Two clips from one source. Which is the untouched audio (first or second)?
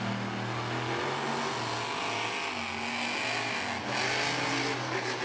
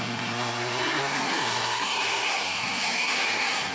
first